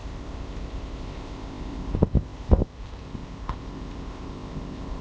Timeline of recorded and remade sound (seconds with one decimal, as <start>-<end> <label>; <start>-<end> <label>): 0.0-5.0 remade